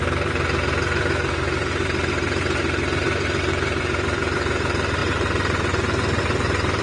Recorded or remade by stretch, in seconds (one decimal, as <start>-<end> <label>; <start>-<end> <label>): 0.0-6.8 remade